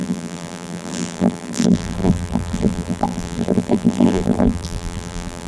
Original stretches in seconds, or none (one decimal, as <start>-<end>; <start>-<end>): none